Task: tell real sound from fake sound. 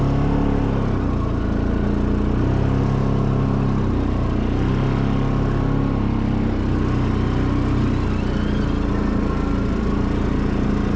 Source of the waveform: real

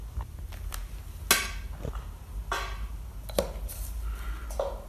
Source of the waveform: real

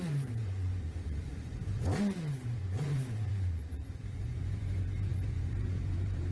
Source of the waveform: fake